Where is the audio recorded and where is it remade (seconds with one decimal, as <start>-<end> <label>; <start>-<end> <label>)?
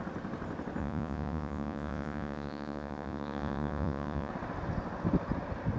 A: 0.0-0.8 recorded; 0.8-4.3 remade; 4.3-5.8 recorded